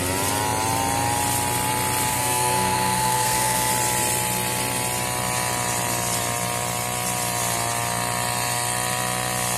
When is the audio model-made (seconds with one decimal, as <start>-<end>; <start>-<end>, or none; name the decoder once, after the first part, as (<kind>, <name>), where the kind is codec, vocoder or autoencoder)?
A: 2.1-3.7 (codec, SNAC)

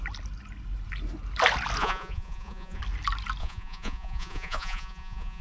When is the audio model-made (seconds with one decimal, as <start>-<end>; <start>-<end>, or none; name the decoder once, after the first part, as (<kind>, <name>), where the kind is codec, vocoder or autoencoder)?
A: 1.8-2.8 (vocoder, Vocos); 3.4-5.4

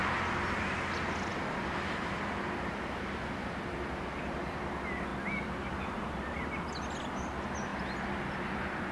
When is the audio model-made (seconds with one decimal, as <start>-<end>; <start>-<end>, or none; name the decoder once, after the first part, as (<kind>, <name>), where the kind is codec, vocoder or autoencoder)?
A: none

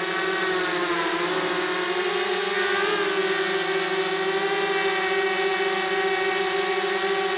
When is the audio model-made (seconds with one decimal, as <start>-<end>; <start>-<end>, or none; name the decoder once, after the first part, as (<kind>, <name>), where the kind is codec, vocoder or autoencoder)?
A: none

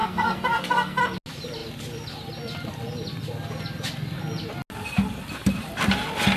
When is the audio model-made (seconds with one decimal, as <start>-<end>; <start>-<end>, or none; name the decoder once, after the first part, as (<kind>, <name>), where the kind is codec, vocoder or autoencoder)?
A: 0.0-1.0 (codec, SNAC)

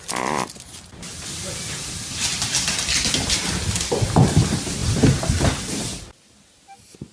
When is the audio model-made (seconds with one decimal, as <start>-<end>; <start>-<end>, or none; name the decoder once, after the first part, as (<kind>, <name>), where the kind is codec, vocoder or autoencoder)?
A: 4.8-5.6 (vocoder, BigVGAN v2)